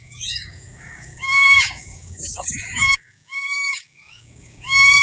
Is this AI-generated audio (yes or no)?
yes